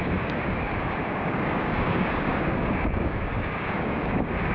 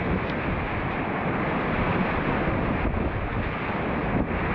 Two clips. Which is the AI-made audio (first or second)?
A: first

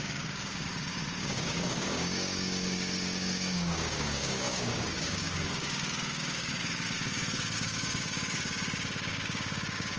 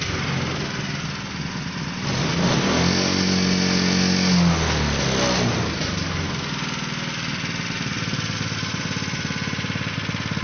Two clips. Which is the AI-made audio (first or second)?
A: first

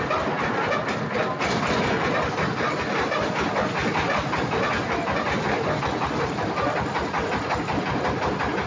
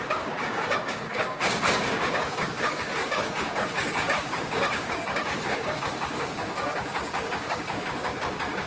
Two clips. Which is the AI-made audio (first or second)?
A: second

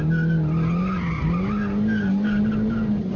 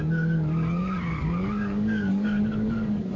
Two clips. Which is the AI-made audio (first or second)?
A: second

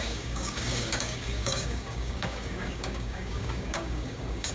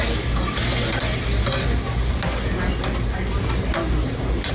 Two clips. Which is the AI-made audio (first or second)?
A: first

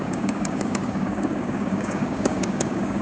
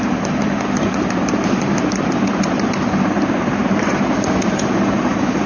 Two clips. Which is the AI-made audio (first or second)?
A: first